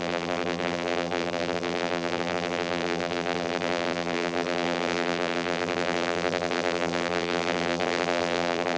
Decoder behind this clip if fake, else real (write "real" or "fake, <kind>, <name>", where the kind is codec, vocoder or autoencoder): fake, vocoder, BigVGAN v2